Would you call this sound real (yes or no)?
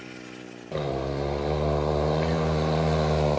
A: yes